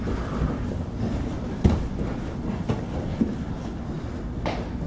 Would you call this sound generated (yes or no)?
no